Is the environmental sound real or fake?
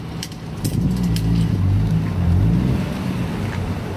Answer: real